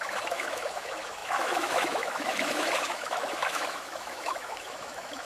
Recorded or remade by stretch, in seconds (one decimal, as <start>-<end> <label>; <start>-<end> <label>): 0.0-5.2 remade